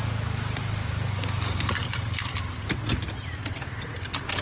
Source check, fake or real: real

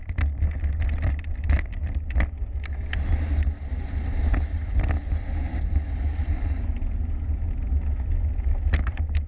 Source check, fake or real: real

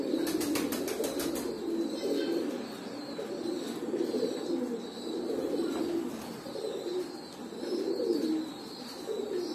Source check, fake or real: real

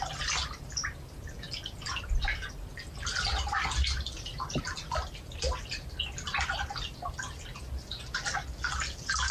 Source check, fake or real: real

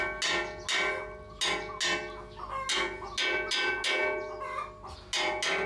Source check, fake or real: real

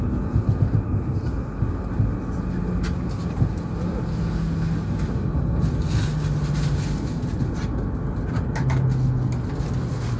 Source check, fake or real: real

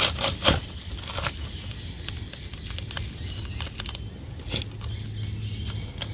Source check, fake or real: real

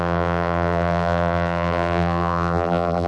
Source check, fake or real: fake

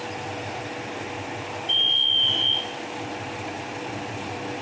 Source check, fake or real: real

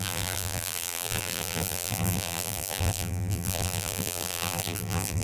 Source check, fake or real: fake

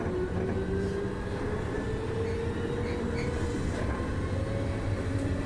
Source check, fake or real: real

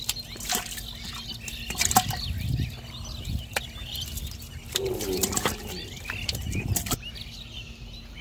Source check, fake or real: real